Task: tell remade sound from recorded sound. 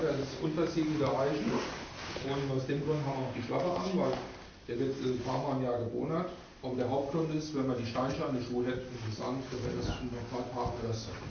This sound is recorded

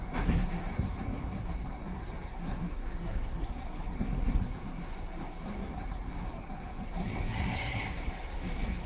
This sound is remade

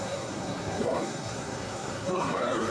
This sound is remade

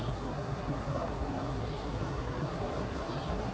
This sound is remade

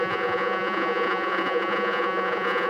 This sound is remade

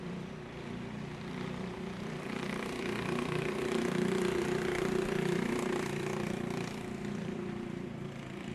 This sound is remade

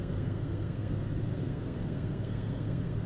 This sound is remade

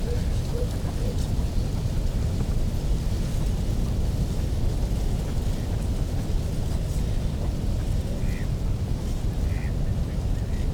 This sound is recorded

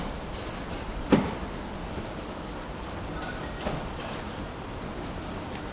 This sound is recorded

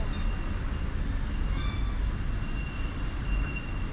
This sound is recorded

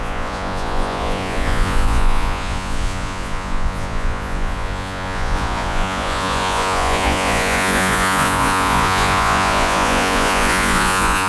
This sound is remade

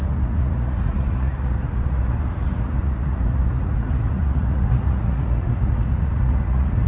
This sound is remade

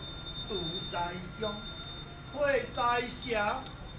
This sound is recorded